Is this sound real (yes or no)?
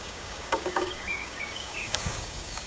no